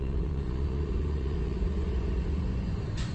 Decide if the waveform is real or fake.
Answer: fake